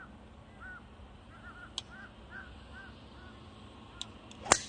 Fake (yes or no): no